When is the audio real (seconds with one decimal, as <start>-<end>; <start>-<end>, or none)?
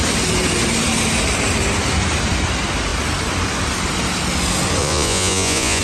0.0-4.8